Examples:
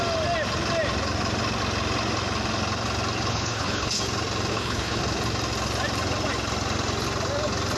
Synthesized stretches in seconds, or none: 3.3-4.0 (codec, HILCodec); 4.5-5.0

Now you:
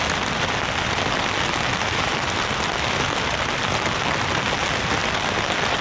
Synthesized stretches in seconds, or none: none

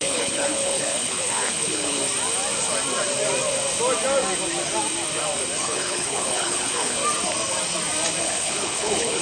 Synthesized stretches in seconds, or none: 0.0-2.0 (codec, HILCodec); 5.6-7.0; 8.2-9.2